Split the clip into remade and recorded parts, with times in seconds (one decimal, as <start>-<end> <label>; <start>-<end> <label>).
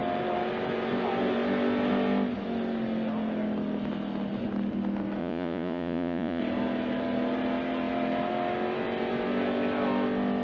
0.0-5.2 recorded; 5.2-6.4 remade; 6.4-10.4 recorded